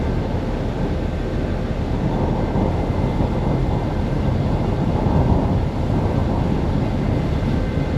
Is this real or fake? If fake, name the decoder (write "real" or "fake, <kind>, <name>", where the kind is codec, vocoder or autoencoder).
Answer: real